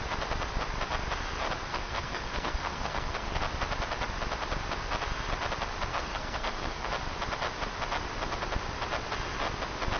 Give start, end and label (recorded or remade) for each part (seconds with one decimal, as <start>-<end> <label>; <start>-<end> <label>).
0.0-1.7 recorded; 1.7-3.4 remade; 3.4-5.9 recorded; 5.9-6.9 remade; 6.9-10.0 recorded